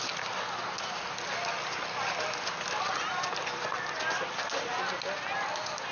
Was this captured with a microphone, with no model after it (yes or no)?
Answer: yes